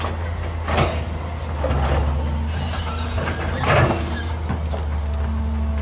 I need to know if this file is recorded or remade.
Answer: recorded